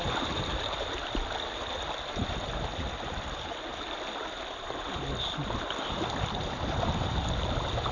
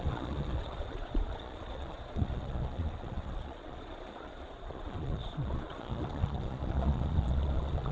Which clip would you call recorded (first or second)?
first